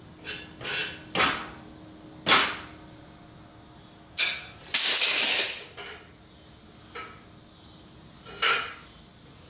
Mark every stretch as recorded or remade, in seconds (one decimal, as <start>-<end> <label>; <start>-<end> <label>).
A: 0.0-9.5 recorded